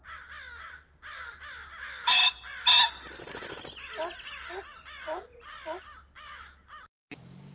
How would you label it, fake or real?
real